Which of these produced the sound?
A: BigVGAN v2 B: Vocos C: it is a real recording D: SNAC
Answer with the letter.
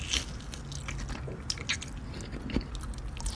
C